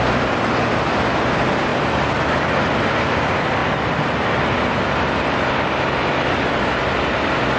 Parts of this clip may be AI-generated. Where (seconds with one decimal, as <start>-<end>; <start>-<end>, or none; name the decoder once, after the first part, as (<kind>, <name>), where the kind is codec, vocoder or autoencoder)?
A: 1.7-2.8 (vocoder, BigVGAN v2); 3.6-6.6